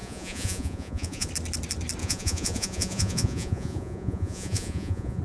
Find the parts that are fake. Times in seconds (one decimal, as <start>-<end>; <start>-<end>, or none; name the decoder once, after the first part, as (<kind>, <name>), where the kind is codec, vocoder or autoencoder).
0.0-1.3 (vocoder, Vocos); 2.0-5.2